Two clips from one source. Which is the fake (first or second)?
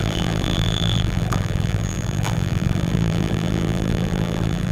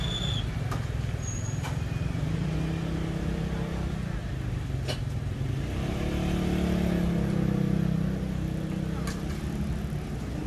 first